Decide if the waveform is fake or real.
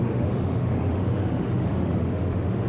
fake